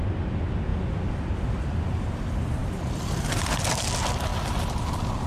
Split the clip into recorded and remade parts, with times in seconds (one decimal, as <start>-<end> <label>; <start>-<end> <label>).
0.0-5.3 recorded